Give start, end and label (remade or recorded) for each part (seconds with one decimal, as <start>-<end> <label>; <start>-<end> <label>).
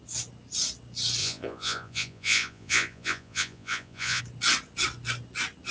0.0-1.2 recorded; 1.2-4.2 remade; 4.2-5.7 recorded